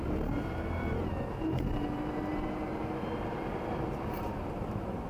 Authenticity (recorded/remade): remade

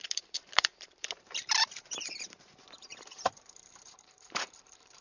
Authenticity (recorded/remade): remade